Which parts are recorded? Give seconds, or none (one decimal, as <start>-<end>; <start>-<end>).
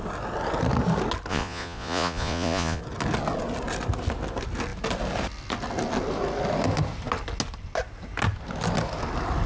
0.0-1.3; 2.8-9.5